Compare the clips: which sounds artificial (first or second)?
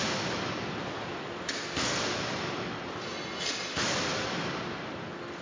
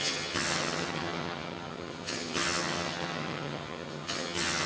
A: second